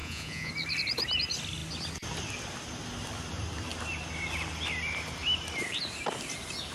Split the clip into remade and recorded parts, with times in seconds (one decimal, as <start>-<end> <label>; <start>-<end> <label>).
0.0-0.5 remade; 0.5-6.7 recorded